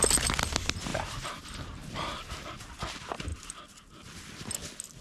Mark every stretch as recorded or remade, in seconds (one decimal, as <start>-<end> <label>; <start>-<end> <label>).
0.0-0.9 recorded; 0.9-2.7 remade; 2.7-5.0 recorded